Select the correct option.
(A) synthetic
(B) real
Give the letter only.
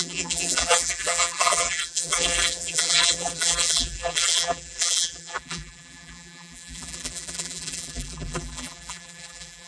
A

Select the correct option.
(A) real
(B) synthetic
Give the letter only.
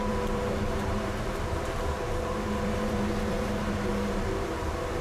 B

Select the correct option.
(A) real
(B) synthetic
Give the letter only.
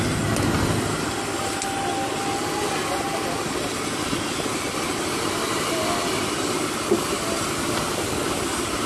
A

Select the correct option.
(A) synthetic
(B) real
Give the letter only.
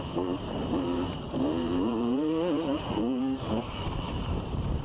A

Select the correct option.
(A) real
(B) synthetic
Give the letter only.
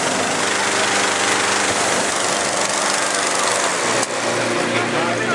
A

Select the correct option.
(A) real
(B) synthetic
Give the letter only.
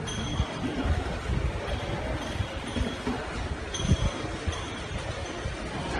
B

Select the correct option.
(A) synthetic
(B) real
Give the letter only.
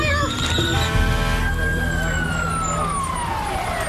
B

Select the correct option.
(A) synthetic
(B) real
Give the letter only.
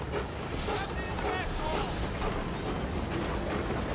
B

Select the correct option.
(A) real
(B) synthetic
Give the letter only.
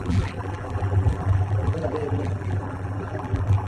B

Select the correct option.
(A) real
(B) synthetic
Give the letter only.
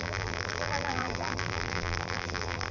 B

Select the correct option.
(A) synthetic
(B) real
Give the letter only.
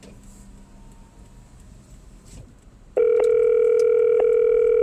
B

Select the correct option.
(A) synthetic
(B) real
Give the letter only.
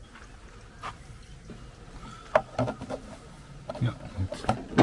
B